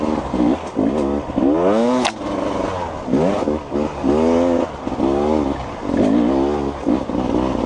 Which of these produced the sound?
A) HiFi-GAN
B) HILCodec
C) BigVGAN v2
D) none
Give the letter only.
D